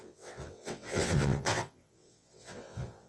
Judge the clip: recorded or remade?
remade